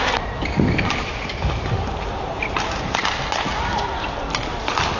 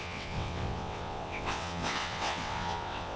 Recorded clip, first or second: first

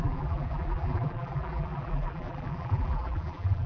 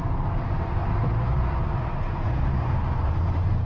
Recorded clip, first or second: second